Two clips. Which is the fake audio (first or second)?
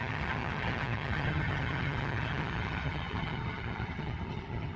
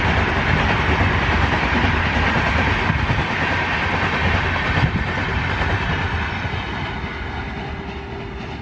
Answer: first